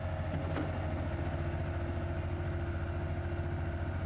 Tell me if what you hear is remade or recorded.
recorded